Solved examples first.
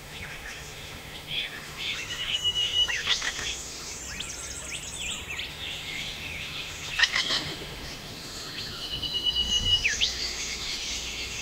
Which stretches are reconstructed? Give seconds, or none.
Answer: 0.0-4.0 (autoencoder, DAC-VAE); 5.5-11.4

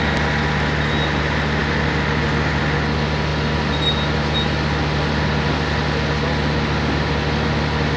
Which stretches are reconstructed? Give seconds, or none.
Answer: none

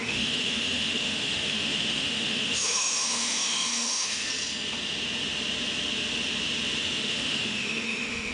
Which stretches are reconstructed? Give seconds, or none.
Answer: 0.0-4.3 (autoencoder, DAC-VAE); 6.8-8.3